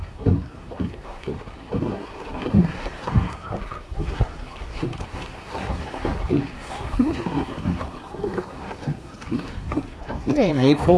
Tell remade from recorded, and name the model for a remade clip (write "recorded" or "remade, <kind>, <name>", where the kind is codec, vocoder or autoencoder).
remade, codec, SNAC